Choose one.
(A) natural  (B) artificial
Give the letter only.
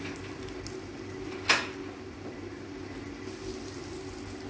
A